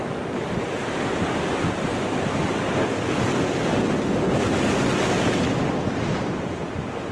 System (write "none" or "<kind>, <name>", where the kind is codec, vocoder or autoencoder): none